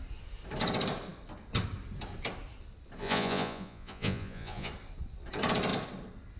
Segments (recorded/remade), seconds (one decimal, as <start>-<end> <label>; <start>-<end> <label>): 0.0-3.0 recorded; 3.0-4.7 remade; 4.7-6.4 recorded